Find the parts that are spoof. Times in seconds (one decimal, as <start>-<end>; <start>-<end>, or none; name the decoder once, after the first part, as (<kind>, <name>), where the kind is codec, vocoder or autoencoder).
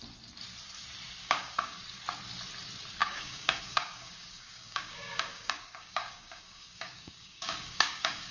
1.2-1.8 (codec, DAC); 3.0-8.3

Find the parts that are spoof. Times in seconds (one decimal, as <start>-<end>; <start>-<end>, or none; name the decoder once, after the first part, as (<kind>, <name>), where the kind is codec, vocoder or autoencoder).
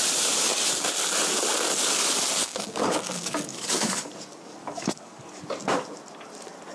2.4-4.1 (codec, DAC); 4.6-5.4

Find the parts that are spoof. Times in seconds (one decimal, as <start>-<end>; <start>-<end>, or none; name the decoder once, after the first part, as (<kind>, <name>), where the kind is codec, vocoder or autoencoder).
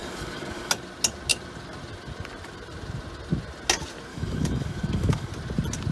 0.0-0.7 (codec, DAC); 4.1-5.3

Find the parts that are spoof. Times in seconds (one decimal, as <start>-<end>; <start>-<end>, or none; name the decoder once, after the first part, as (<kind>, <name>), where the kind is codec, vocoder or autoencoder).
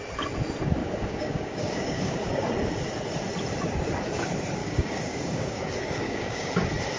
0.8-2.3 (codec, DAC); 4.6-6.5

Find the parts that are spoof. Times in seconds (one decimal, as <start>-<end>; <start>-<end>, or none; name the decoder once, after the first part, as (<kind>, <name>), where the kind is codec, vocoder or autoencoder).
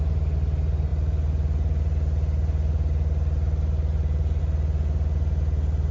none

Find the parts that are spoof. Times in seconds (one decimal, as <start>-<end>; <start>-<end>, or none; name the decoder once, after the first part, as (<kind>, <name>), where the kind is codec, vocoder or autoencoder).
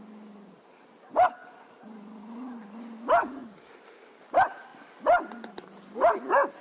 3.2-3.7 (codec, DAC)